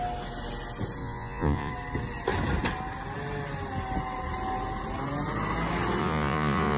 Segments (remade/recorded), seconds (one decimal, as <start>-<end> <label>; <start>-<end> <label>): 0.0-1.0 recorded; 1.0-1.7 remade; 1.7-6.0 recorded; 6.0-6.8 remade